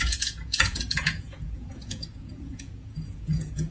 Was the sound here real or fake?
fake